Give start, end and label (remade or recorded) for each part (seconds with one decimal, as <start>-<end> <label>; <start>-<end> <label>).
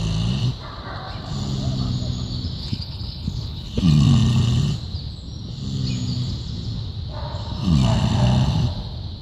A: 0.0-2.6 recorded; 2.6-3.8 remade; 3.8-9.2 recorded